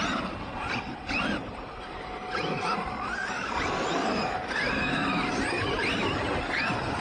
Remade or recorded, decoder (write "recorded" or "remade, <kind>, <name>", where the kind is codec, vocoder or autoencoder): recorded